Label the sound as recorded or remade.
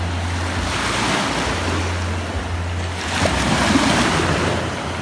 recorded